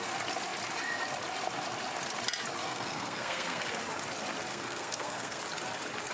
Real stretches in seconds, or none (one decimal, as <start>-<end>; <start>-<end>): 0.0-2.6; 3.6-4.5; 5.4-6.1